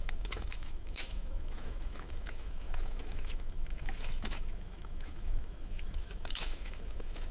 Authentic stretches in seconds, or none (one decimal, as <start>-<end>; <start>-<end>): none